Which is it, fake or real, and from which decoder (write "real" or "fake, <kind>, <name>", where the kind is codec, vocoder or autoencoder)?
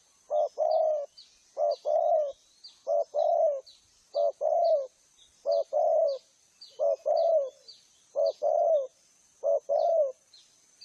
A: real